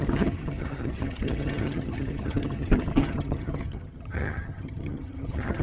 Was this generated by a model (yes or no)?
yes